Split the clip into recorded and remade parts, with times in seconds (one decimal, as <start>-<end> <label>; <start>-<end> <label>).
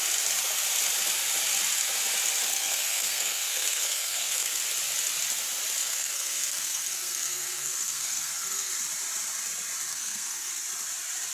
0.0-2.5 recorded; 2.5-4.6 remade; 4.6-5.8 recorded; 5.8-8.7 remade; 8.7-9.9 recorded; 9.9-10.5 remade; 10.5-11.3 recorded